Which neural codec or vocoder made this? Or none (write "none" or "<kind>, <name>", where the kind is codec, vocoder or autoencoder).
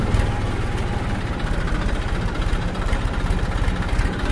none